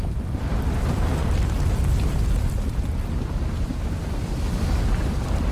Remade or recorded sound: remade